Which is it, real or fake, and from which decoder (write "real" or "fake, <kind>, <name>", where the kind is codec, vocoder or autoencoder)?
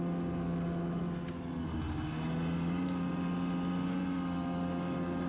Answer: real